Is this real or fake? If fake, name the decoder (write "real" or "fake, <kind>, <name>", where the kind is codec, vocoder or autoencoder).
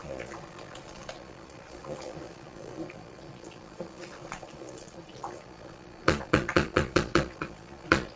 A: fake, vocoder, Vocos